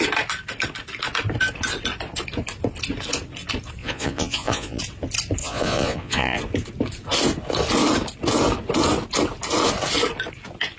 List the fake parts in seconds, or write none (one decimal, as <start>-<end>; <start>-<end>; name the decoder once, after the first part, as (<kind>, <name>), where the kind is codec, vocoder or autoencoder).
3.8-4.8 (vocoder, Vocos); 5.4-6.4